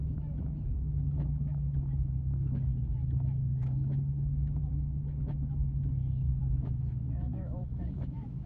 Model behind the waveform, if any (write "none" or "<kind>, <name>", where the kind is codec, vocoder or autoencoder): autoencoder, DAC-VAE